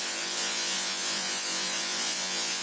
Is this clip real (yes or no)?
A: no